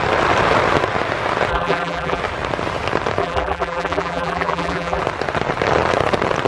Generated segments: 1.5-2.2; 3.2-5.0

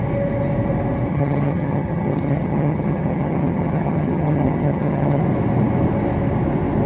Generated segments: 1.1-5.2

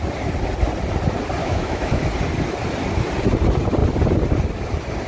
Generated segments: 1.4-2.1

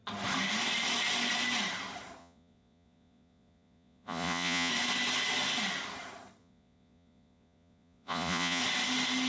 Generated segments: 2.2-4.7; 6.4-8.6